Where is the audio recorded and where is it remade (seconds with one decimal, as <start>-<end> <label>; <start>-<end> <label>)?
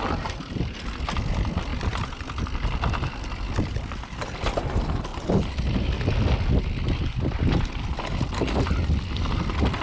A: 0.0-9.8 recorded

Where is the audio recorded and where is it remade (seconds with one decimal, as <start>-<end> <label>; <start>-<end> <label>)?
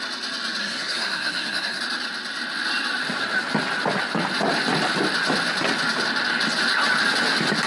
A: 0.0-0.6 recorded; 0.6-1.8 remade; 1.8-7.7 recorded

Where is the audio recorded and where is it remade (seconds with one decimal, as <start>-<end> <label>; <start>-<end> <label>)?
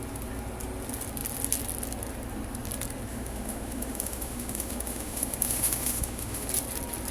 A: 0.0-3.1 recorded; 3.1-6.5 remade; 6.5-7.1 recorded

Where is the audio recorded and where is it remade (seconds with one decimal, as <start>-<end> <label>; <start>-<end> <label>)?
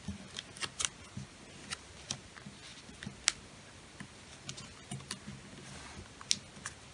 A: 0.0-6.9 recorded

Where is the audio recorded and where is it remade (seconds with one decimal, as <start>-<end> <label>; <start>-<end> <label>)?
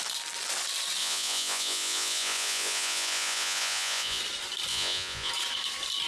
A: 0.0-1.0 recorded; 1.0-4.2 remade; 4.2-4.7 recorded; 4.7-5.3 remade; 5.3-6.1 recorded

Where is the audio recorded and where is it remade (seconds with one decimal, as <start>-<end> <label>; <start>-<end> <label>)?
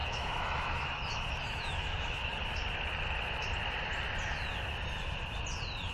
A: 0.0-2.3 remade; 2.3-5.9 recorded